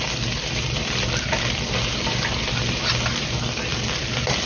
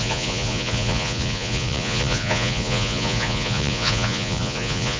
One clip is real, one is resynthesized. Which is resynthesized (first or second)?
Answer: second